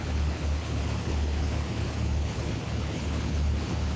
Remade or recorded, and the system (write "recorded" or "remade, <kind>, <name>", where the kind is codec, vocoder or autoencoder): remade, codec, HILCodec